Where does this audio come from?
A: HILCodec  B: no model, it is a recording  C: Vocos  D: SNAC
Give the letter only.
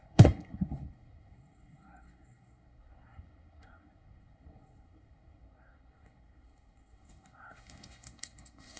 D